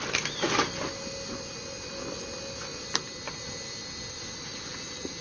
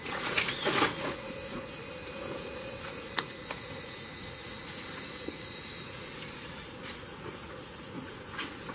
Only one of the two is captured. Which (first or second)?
first